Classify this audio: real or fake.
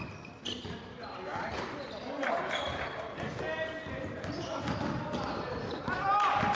real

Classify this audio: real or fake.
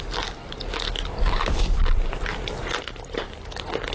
real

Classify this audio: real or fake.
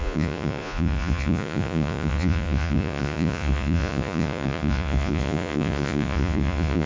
fake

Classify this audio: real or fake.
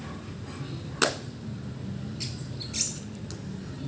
real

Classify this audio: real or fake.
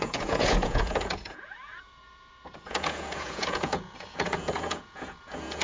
fake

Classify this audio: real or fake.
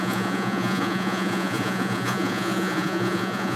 fake